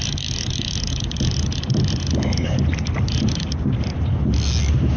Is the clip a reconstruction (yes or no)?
no